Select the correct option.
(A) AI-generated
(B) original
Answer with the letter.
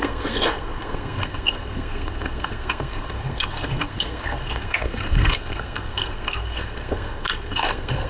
A